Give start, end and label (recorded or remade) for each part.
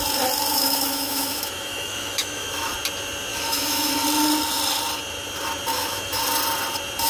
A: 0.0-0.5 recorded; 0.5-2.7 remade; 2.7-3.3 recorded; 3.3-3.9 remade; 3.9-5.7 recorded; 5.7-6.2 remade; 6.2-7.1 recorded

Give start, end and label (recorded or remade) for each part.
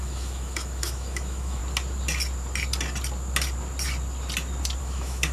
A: 0.0-1.6 remade; 1.6-4.8 recorded; 4.8-5.3 remade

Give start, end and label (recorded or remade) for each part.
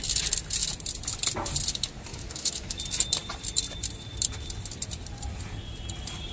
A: 0.0-2.1 recorded; 2.1-2.8 remade; 2.8-6.3 recorded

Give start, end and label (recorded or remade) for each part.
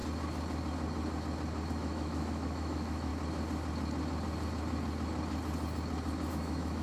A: 0.0-1.7 recorded; 1.7-3.1 remade; 3.1-6.3 recorded; 6.3-6.8 remade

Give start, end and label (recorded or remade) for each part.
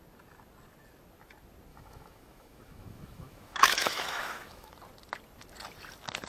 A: 0.0-1.7 recorded; 1.7-4.7 remade; 4.7-6.3 recorded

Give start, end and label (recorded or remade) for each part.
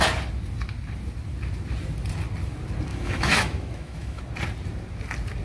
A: 0.0-2.9 recorded; 2.9-4.2 remade; 4.2-5.4 recorded